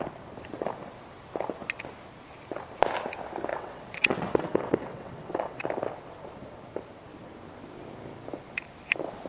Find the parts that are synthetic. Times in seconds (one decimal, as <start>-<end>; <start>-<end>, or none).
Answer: 3.5-5.6